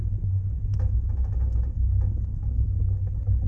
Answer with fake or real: real